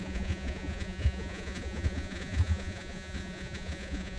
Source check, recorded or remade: remade